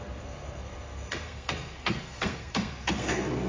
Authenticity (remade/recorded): remade